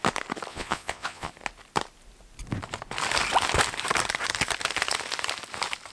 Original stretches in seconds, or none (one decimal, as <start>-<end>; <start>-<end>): 0.0-0.5; 1.3-5.9